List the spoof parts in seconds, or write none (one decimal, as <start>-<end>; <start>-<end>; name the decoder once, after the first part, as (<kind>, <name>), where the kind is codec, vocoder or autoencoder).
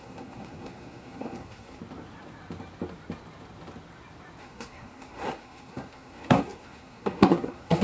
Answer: 0.0-1.8 (codec, SNAC); 4.4-7.8